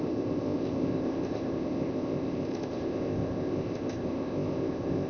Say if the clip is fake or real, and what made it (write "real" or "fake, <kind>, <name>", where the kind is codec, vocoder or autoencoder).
fake, codec, ZipCodec